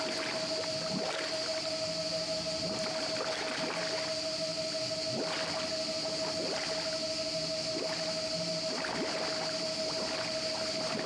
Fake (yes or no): no